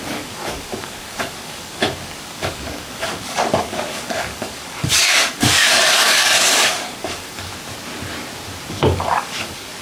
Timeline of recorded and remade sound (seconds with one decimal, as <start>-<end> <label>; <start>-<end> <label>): 0.0-7.5 remade; 7.5-8.7 recorded; 8.7-9.8 remade

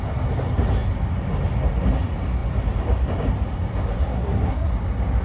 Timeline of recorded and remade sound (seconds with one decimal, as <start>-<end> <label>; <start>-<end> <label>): 0.0-3.9 recorded; 3.9-4.7 remade; 4.7-5.2 recorded